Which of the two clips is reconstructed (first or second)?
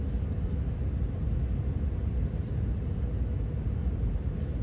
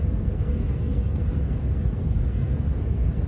second